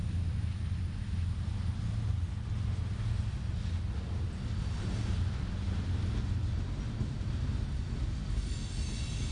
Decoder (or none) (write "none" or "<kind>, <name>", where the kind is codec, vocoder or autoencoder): none